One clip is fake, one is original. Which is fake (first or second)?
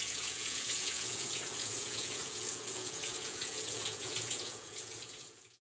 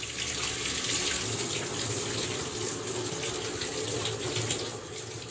first